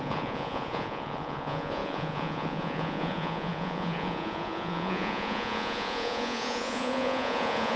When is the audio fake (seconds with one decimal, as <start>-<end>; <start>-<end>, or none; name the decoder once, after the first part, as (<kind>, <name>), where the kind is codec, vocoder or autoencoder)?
0.0-7.8 (vocoder, Vocos)